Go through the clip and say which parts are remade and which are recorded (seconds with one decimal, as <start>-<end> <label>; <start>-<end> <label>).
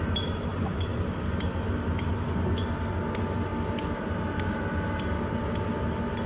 0.0-6.3 recorded